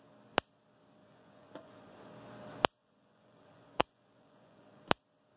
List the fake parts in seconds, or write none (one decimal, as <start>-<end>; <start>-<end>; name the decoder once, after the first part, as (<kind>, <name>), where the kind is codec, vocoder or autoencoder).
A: 1.0-2.1 (vocoder, Vocos); 2.8-4.8